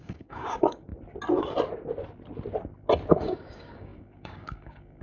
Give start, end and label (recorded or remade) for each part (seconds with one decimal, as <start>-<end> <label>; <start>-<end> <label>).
0.0-0.9 remade; 0.9-3.1 recorded; 3.1-5.0 remade